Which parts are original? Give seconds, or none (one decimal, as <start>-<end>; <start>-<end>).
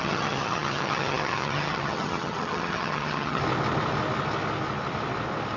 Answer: 3.4-5.6